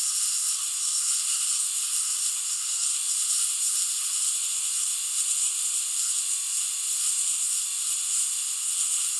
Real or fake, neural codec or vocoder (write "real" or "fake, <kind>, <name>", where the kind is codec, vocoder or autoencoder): fake, codec, SNAC